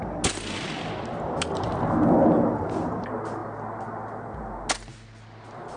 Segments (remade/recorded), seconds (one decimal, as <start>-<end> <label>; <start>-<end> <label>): 0.0-5.8 recorded